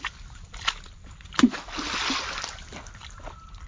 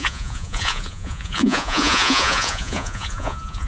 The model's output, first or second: second